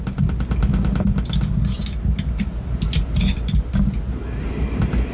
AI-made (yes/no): no